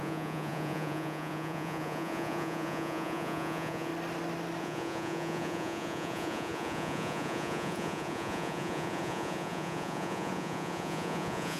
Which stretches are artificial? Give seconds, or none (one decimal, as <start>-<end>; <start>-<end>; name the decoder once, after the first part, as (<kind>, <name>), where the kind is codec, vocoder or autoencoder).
0.0-3.9 (vocoder, Vocos); 4.6-11.6